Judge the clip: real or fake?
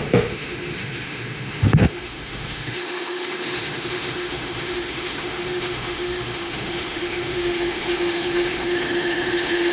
fake